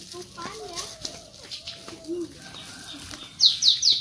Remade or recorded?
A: recorded